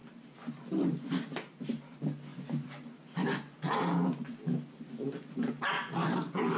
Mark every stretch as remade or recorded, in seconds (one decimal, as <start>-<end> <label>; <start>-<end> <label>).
0.0-6.6 recorded